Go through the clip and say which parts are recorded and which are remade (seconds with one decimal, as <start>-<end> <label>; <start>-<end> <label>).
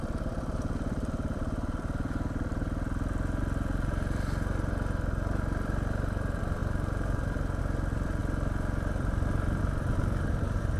0.0-6.6 remade; 6.6-7.6 recorded; 7.6-10.8 remade